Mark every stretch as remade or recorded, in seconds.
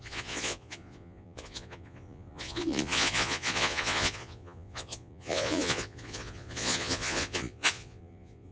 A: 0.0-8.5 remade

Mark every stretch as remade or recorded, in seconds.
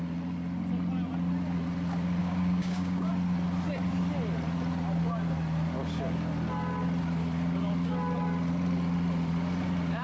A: 0.0-2.2 recorded; 2.2-3.1 remade; 3.1-10.0 recorded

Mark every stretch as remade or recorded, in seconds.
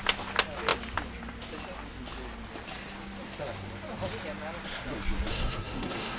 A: 0.0-5.3 recorded; 5.3-6.2 remade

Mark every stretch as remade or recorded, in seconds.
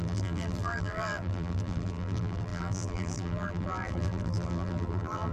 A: 0.0-5.3 remade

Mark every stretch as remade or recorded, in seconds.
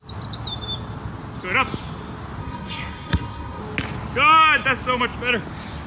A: 0.0-2.4 recorded; 2.4-3.6 remade; 3.6-5.9 recorded